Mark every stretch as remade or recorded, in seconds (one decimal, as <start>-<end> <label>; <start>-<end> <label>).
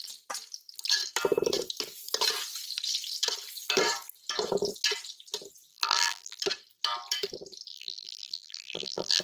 0.0-5.7 recorded; 5.7-6.4 remade; 6.4-7.7 recorded; 7.7-9.2 remade